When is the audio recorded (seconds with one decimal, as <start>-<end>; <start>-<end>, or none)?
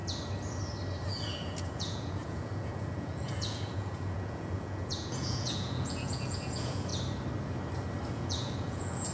0.0-1.1; 6.9-8.1